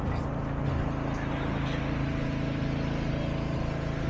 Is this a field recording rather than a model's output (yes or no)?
yes